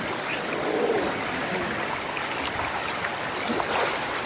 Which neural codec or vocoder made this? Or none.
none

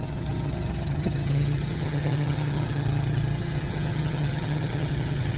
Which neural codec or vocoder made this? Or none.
vocoder, HiFi-GAN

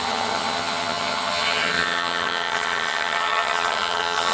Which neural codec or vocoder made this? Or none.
vocoder, HiFi-GAN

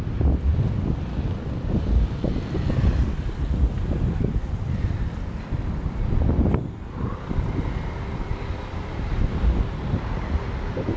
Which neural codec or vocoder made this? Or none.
none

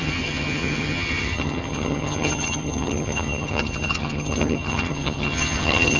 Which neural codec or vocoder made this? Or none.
vocoder, HiFi-GAN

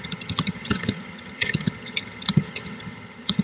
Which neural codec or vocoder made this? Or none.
vocoder, HiFi-GAN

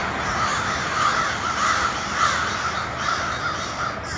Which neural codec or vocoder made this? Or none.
none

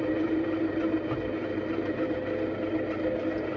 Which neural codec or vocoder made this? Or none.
none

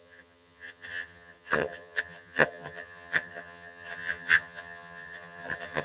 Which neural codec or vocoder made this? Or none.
vocoder, HiFi-GAN